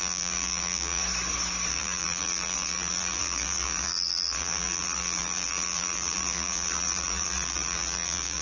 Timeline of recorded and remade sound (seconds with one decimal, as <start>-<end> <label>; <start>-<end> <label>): 0.0-1.0 remade; 1.0-1.7 recorded; 1.7-8.4 remade

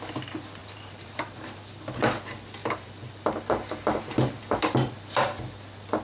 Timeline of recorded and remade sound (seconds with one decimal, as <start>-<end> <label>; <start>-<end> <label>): 0.0-0.6 recorded; 0.6-1.6 remade; 1.6-2.6 recorded; 2.6-4.9 remade; 4.9-6.0 recorded

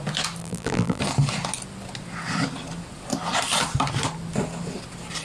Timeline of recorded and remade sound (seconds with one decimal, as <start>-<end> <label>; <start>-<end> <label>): 0.0-0.4 recorded; 0.4-1.0 remade; 1.0-5.2 recorded

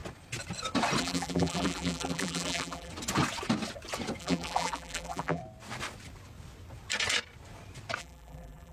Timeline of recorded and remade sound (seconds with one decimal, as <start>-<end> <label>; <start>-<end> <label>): 0.0-1.0 recorded; 1.0-2.9 remade; 2.9-4.2 recorded; 4.2-5.4 remade; 5.4-8.0 recorded; 8.0-8.7 remade

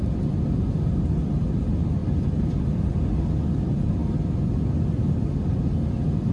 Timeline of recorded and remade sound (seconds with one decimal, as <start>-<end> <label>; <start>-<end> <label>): 0.0-2.0 recorded; 2.0-2.7 remade; 2.7-6.3 recorded

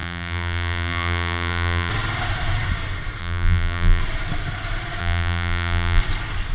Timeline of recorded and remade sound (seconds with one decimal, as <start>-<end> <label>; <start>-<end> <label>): 0.0-1.9 remade; 1.9-3.2 recorded; 3.2-4.0 remade; 4.0-5.0 recorded; 5.0-6.0 remade; 6.0-6.5 recorded